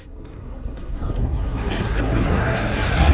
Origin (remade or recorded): remade